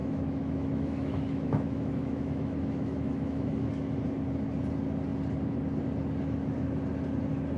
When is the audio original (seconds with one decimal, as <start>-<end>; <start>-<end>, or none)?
3.7-7.6